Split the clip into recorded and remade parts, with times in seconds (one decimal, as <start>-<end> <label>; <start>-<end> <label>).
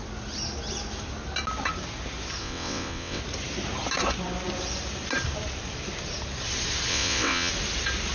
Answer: 0.0-2.4 recorded; 2.4-3.2 remade; 3.2-6.9 recorded; 6.9-7.5 remade; 7.5-8.1 recorded